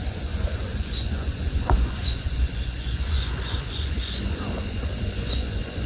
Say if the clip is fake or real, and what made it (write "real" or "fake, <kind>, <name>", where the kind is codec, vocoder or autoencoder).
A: fake, vocoder, Vocos